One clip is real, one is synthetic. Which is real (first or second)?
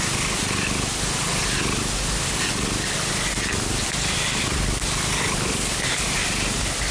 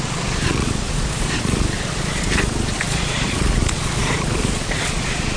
first